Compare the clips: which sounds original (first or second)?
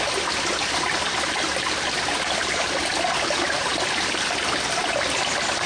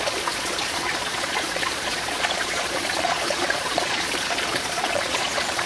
first